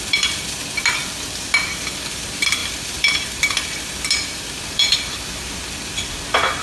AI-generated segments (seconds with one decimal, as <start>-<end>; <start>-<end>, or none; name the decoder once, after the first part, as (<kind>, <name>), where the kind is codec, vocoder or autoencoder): 0.0-6.6 (vocoder, BigVGAN v2)